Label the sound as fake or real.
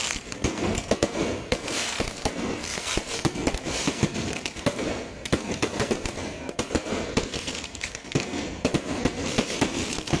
fake